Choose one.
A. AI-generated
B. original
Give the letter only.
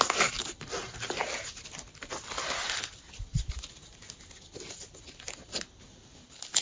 B